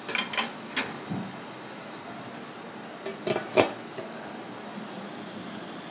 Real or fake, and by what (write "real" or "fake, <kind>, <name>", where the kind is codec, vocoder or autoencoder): real